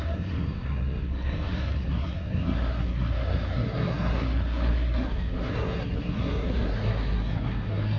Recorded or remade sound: remade